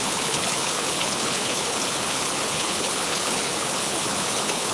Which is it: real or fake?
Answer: fake